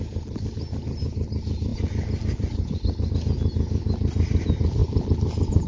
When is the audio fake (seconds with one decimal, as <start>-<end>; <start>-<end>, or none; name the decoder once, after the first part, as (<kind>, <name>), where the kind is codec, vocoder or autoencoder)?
none